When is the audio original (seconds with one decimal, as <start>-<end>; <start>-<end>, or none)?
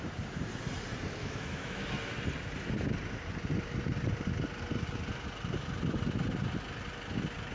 0.0-1.2; 1.9-7.5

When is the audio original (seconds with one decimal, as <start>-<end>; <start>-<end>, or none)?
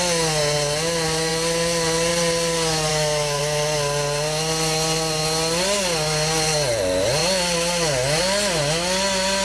0.0-2.9; 3.4-9.4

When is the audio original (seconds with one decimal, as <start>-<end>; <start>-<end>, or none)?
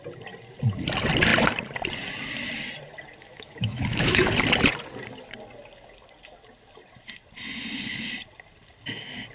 0.0-3.2; 4.3-9.3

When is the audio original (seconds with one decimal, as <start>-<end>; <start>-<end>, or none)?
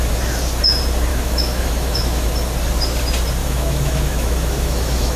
0.0-1.1; 2.3-3.4